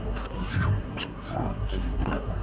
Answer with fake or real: fake